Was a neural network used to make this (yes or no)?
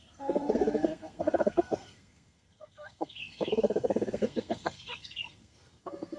yes